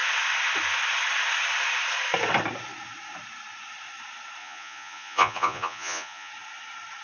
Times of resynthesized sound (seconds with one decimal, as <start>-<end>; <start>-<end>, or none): 4.4-6.3